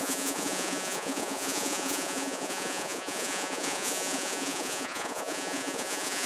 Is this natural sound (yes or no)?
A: no